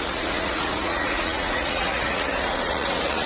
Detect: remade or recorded remade